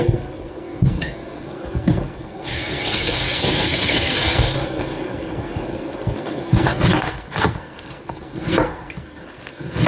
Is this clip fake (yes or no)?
yes